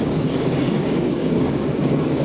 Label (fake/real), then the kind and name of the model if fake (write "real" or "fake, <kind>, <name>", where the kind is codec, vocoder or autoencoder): fake, codec, DAC